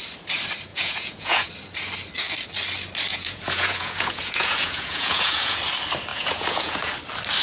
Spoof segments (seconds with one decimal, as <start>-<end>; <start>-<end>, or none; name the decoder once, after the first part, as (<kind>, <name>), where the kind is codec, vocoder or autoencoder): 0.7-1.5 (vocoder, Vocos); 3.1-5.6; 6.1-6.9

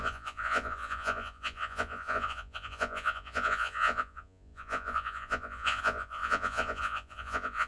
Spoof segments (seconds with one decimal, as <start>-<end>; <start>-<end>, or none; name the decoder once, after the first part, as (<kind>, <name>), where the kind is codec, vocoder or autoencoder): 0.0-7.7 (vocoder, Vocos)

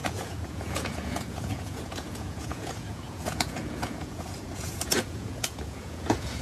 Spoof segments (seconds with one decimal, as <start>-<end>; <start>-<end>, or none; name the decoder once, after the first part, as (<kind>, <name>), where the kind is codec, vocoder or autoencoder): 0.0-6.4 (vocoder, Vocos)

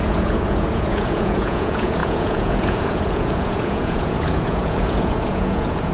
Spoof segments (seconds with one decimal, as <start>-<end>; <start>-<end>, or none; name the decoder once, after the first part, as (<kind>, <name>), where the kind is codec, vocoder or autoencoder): 0.0-5.9 (vocoder, Vocos)

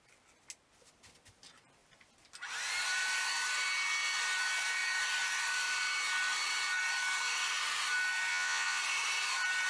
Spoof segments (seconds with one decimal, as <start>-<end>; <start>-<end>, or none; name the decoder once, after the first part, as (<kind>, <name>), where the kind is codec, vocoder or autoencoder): 8.3-8.8 (vocoder, Vocos)